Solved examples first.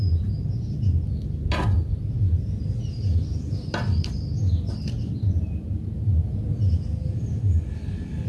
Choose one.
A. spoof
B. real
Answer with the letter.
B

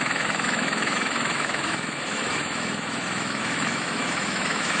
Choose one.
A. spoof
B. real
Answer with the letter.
A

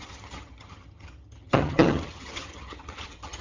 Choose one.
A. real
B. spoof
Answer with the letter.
B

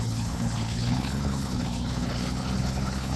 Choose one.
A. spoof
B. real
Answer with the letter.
A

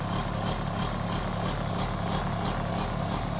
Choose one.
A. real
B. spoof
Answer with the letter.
A